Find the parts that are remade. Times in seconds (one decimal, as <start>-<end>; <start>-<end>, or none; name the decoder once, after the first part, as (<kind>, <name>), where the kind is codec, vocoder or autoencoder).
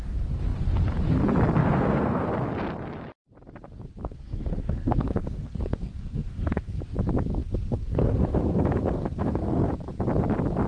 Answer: 1.6-2.3 (codec, SNAC); 4.0-6.8; 7.4-9.7